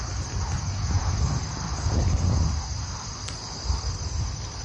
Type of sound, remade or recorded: recorded